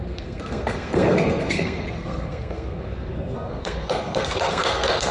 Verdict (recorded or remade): remade